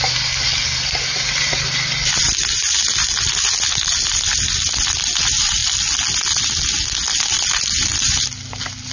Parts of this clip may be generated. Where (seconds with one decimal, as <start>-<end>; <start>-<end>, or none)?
none

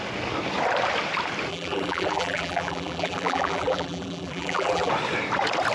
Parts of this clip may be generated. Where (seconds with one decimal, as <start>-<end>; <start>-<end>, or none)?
1.5-4.9

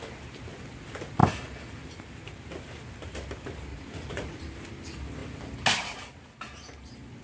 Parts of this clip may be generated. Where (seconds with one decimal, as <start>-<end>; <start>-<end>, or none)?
3.7-4.4

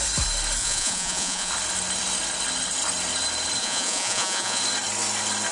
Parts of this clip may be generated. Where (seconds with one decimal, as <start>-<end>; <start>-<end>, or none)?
0.6-1.5; 3.6-4.6

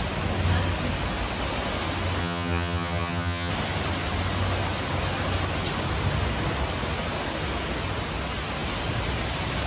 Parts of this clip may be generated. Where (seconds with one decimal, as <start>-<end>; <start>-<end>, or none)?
2.2-3.5

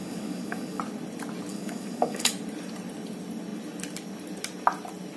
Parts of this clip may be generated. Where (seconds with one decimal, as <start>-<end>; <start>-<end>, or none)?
0.0-0.8; 1.5-2.3

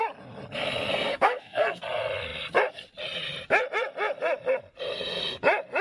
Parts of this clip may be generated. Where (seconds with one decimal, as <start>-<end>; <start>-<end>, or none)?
0.9-1.8

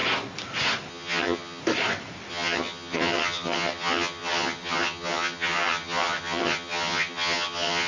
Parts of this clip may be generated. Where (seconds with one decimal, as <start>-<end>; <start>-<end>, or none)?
0.9-1.6; 2.3-7.9